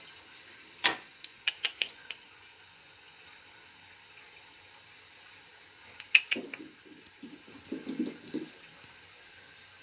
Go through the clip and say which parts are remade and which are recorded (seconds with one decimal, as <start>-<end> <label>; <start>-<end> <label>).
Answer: 0.0-0.9 recorded; 0.9-3.2 remade; 3.2-9.8 recorded